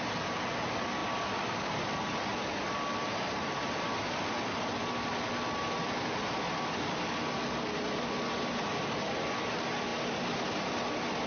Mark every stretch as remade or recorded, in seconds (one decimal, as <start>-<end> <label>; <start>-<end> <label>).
0.0-11.3 recorded